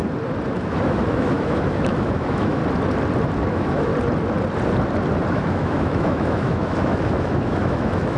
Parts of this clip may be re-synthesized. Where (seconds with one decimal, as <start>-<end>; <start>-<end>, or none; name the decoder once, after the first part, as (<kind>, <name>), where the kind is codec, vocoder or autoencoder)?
0.5-2.6 (autoencoder, DAC-VAE); 3.5-3.9; 5.3-8.2